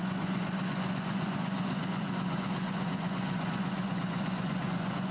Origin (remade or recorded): remade